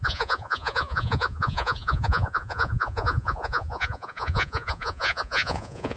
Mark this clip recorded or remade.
remade